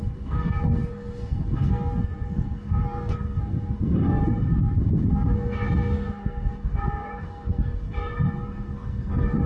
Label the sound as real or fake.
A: fake